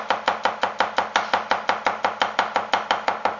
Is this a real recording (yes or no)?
yes